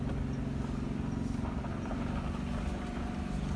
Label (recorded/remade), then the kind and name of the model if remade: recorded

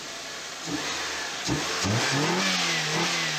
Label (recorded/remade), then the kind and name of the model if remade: recorded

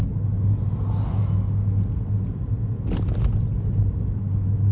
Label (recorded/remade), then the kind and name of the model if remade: recorded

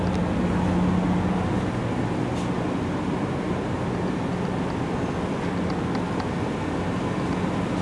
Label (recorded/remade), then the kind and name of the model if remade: recorded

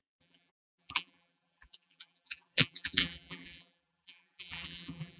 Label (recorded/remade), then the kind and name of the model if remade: remade, vocoder, BigVGAN v2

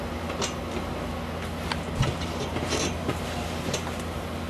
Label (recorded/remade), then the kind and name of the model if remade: recorded